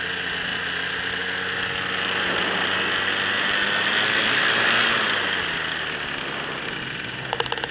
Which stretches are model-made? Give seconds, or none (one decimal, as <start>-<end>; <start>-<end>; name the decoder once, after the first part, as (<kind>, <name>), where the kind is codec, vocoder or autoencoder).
none